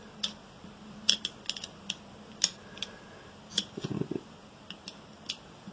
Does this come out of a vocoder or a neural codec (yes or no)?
no